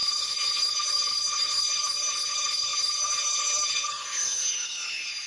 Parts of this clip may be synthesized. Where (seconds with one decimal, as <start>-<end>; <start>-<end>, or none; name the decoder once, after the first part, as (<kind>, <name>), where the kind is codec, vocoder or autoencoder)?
0.0-5.3 (codec, HILCodec)